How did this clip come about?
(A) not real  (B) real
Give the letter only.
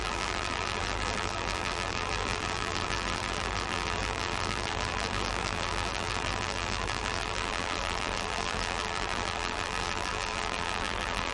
A